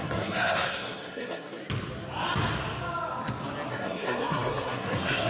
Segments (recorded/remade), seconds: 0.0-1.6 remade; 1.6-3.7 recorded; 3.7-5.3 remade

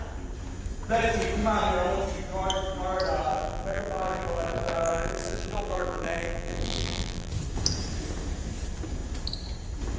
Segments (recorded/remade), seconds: 0.0-3.3 recorded; 3.3-7.3 remade; 7.3-10.0 recorded

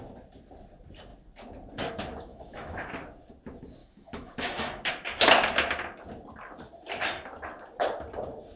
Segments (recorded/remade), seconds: 0.0-2.3 recorded; 2.3-2.9 remade; 2.9-3.8 recorded; 3.8-4.9 remade; 4.9-8.6 recorded